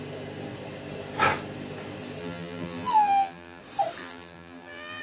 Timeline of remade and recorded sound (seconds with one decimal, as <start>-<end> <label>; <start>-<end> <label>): 0.0-2.2 recorded; 2.2-3.6 remade; 3.6-4.0 recorded; 4.0-5.0 remade